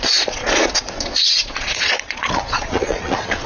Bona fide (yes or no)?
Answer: no